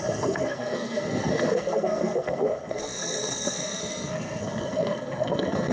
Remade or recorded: remade